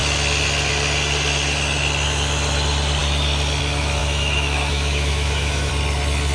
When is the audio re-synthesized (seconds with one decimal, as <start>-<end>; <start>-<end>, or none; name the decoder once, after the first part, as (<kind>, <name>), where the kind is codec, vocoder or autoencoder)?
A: 4.0-5.7 (autoencoder, DAC-VAE)

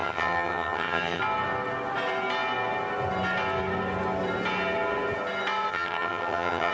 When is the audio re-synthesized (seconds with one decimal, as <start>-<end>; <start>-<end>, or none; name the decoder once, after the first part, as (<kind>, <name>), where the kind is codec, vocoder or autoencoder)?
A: 0.0-1.2 (vocoder, HiFi-GAN); 5.7-6.7

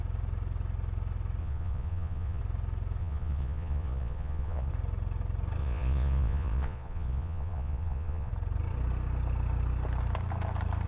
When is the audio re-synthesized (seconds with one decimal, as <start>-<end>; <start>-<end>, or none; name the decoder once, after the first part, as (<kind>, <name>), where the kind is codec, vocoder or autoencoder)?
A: 1.4-2.4 (vocoder, Vocos); 3.0-4.7; 5.6-8.3

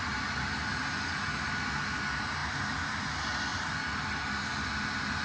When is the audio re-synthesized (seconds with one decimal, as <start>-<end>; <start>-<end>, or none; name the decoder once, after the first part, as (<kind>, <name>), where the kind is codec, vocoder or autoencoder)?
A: none